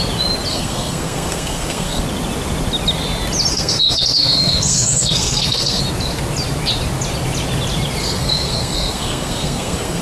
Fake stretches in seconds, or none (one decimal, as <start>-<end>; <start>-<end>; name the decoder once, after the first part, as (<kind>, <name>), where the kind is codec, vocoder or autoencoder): 0.5-2.0 (codec, SNAC); 3.5-5.8; 8.0-10.0